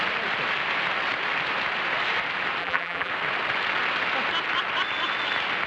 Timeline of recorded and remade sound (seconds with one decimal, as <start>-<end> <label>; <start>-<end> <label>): 0.0-2.6 recorded; 2.6-3.1 remade; 3.1-5.7 recorded